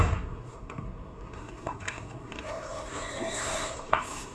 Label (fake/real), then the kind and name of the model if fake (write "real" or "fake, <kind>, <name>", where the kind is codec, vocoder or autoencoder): fake, codec, SNAC